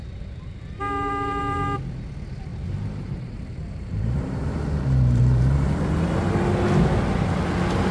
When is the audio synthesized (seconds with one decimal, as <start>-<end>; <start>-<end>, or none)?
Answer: 0.0-0.6; 2.5-5.9